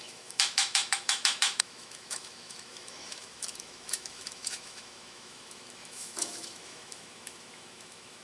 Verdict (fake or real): fake